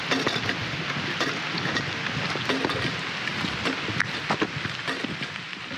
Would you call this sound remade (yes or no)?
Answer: no